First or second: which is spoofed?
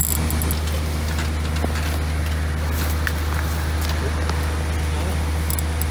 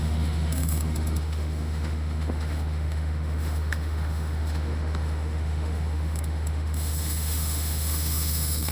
second